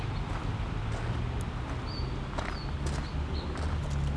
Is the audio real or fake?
real